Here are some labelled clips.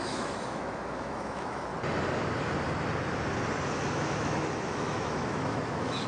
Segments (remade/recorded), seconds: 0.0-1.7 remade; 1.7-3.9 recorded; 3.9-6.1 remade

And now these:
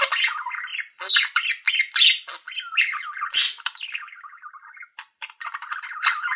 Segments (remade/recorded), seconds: 0.0-0.7 recorded; 0.7-1.7 remade; 1.7-3.4 recorded; 3.4-6.4 remade

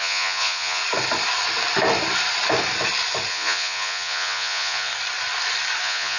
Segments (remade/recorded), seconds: 0.0-0.8 remade; 0.8-3.3 recorded; 3.3-4.9 remade; 4.9-5.8 recorded; 5.8-6.2 remade

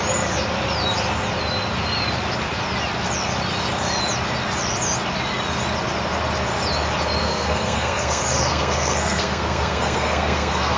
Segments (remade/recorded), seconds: 0.0-7.2 recorded; 7.2-10.8 remade